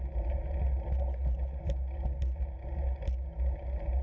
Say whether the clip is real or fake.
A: real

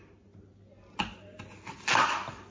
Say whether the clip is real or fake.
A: real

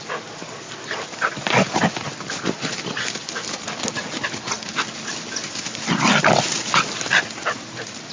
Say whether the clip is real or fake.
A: real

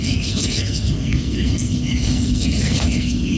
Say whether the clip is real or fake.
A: fake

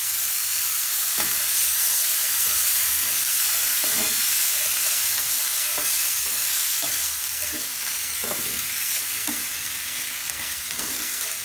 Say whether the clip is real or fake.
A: fake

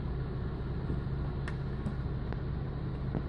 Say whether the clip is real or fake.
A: real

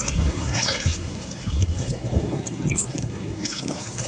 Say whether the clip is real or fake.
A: fake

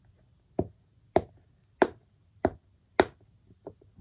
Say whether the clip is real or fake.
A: real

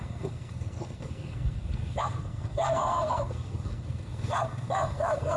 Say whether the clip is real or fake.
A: fake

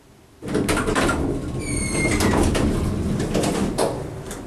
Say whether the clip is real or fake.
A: real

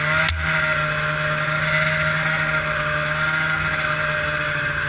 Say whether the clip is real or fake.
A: real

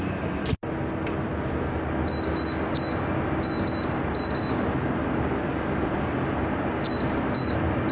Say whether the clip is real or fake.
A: real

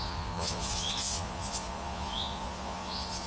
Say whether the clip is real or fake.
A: fake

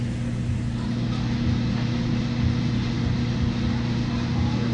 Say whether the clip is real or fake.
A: real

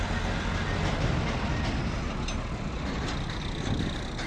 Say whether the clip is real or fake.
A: real